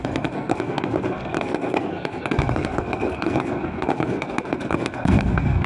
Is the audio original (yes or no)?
no